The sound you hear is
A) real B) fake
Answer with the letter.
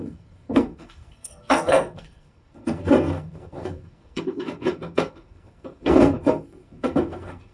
B